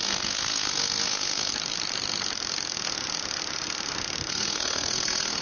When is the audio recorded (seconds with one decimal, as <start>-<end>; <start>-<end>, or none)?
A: 1.5-4.3